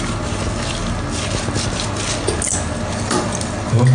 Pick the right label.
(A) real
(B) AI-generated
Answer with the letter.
A